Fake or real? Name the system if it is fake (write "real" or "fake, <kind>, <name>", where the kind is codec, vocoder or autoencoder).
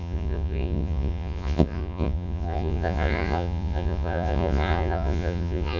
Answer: fake, vocoder, Vocos